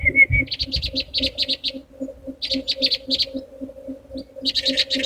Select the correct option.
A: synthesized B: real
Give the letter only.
B